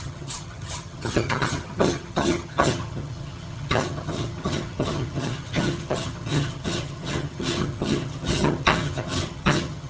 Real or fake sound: fake